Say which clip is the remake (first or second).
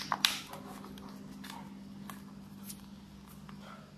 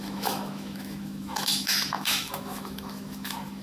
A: second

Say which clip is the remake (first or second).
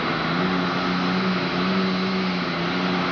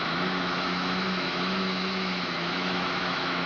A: second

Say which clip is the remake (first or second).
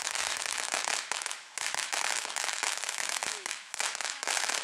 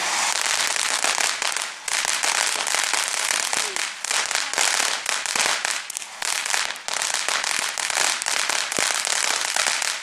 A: first